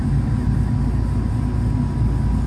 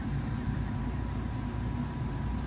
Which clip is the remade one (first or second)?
second